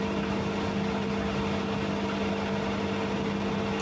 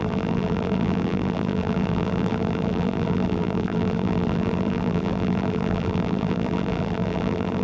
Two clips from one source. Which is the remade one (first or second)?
second